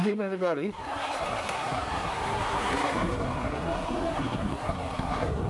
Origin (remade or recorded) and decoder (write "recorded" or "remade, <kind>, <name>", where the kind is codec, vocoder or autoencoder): remade, codec, SNAC